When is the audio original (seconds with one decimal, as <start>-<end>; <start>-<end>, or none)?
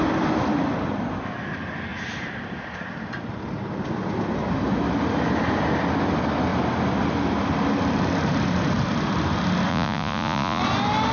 0.0-9.7; 10.6-11.1